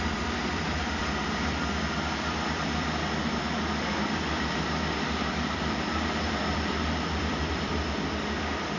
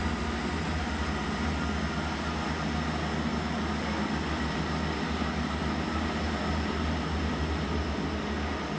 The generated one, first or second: first